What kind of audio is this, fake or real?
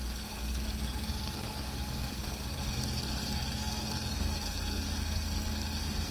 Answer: fake